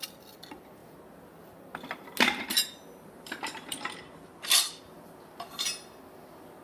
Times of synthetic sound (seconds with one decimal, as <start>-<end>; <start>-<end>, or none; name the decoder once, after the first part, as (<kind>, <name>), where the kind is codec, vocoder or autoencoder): none